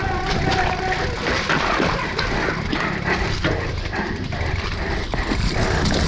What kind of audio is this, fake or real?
real